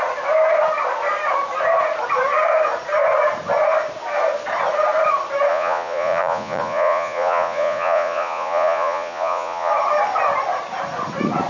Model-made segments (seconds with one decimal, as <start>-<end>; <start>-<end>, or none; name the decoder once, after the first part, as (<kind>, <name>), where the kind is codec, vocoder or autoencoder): 5.5-9.7 (vocoder, Vocos)